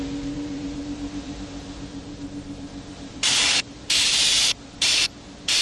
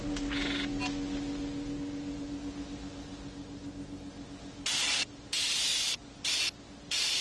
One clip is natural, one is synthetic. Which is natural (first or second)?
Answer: second